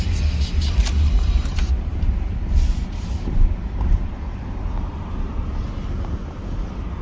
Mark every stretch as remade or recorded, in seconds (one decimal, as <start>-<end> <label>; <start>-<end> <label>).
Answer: 0.0-1.9 recorded; 1.9-5.3 remade; 5.3-7.0 recorded